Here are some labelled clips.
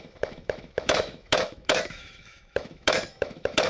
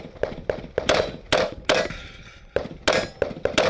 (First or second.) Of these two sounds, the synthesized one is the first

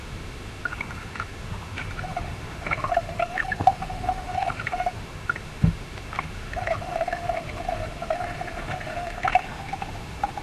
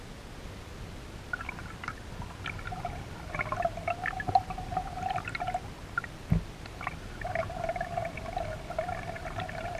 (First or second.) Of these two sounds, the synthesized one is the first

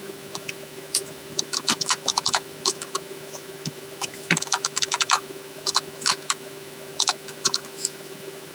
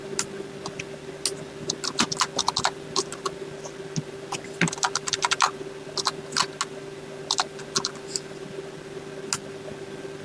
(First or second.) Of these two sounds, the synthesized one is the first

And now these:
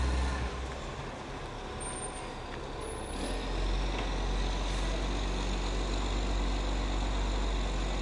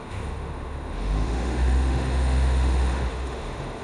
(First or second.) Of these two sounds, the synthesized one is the second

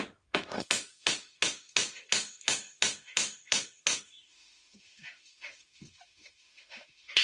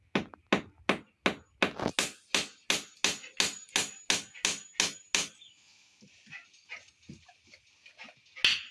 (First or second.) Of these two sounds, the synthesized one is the first